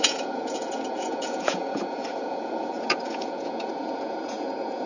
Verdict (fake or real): fake